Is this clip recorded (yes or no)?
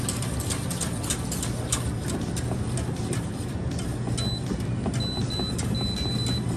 yes